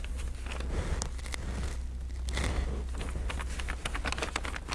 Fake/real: real